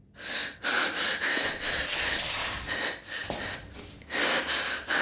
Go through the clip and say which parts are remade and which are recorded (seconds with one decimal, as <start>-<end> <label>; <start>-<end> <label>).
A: 0.0-5.0 recorded